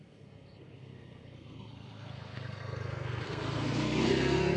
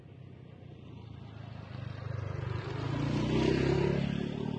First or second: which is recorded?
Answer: second